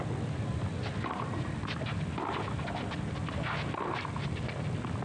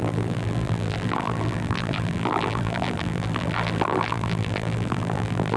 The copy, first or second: second